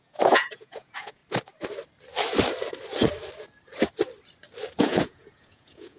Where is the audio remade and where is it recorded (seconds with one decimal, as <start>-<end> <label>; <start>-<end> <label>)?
0.0-1.2 remade; 1.2-4.8 recorded; 4.8-6.0 remade